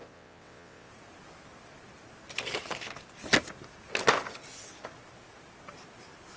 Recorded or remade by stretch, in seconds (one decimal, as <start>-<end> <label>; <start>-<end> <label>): 0.0-0.9 remade; 0.9-6.4 recorded